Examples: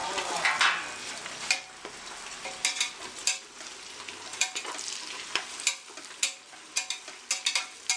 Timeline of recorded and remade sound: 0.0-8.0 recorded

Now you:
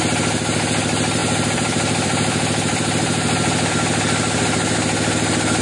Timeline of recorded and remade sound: 0.0-1.2 recorded; 1.2-3.7 remade; 3.7-5.6 recorded

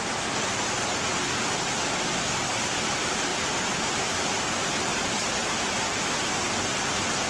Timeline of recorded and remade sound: 0.0-3.3 recorded; 3.3-4.3 remade; 4.3-4.9 recorded; 4.9-6.2 remade; 6.2-7.3 recorded

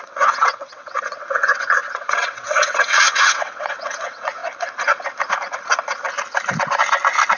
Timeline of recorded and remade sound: 0.0-4.4 remade; 4.4-7.4 recorded

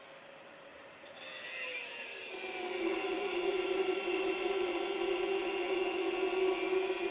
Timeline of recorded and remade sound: 0.0-0.7 recorded; 0.7-4.7 remade; 4.7-7.1 recorded

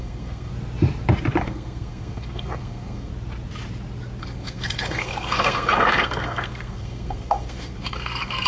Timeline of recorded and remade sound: 0.0-0.5 remade; 0.5-1.4 recorded; 1.4-3.1 remade; 3.1-4.2 recorded; 4.2-8.5 remade